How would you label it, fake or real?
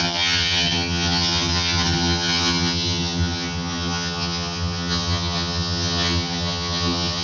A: fake